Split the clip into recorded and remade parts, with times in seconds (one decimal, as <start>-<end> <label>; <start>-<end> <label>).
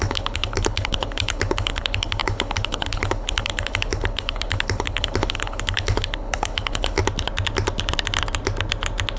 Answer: 0.0-7.0 remade; 7.0-9.2 recorded